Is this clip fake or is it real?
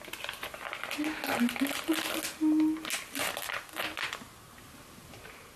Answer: real